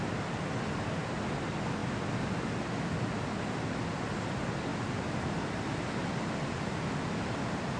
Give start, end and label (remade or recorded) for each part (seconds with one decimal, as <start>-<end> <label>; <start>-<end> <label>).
0.0-7.8 recorded